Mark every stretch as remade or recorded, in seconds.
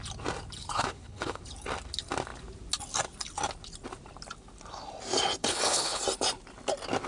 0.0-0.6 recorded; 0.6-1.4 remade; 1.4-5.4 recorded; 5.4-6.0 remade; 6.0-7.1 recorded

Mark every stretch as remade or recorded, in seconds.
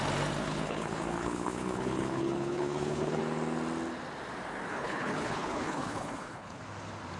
0.0-0.4 recorded; 0.4-3.2 remade; 3.2-4.7 recorded; 4.7-6.6 remade; 6.6-7.2 recorded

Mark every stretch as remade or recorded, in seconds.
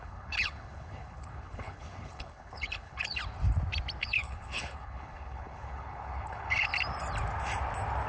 0.0-3.2 remade; 3.2-4.0 recorded; 4.0-6.7 remade; 6.7-8.1 recorded